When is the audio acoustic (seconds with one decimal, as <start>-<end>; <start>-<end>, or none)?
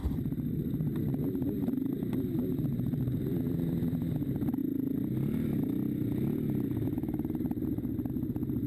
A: 3.4-8.7